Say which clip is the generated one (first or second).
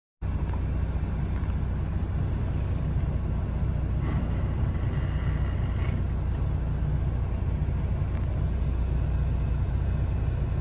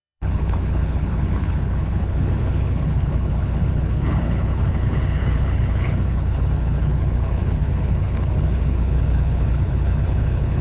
second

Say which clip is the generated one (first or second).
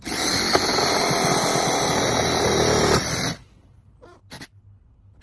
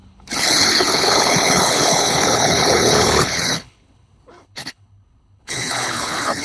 second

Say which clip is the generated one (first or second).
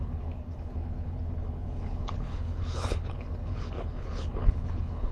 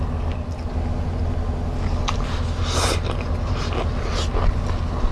first